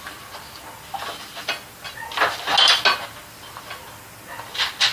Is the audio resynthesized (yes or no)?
no